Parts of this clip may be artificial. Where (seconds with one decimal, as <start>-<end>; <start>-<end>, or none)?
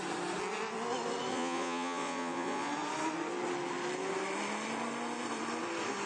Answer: 1.3-2.7